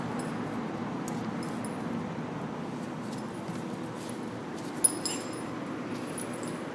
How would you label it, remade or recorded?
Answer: recorded